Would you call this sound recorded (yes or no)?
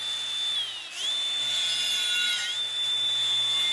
yes